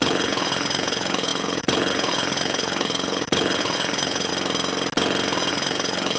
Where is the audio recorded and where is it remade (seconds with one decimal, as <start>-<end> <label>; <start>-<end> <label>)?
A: 0.0-4.3 remade; 4.3-5.5 recorded; 5.5-6.2 remade